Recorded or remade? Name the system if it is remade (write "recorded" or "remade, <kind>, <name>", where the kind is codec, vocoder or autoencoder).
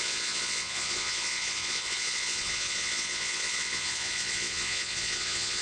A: remade, vocoder, Vocos